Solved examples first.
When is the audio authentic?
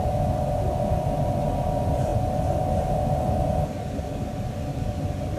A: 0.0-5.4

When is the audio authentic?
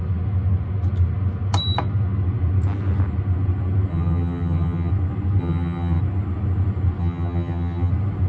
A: 0.0-3.9; 4.9-5.4; 6.0-7.0; 7.9-8.3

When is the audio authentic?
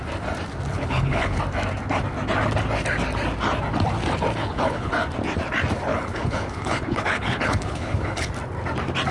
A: 0.0-0.7; 1.4-4.4; 4.9-5.9; 8.3-9.1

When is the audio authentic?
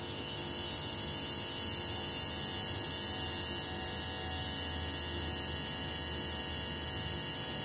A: 0.0-7.6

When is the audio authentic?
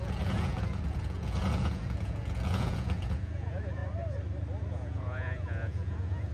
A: 3.8-4.7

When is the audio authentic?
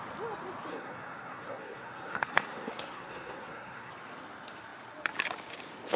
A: 0.0-0.7; 3.9-6.0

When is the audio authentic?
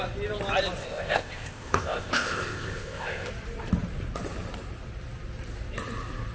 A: 0.0-0.8; 3.3-6.3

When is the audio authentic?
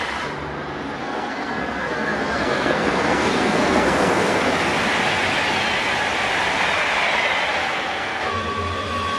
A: 0.0-1.0; 4.5-7.6; 8.4-9.2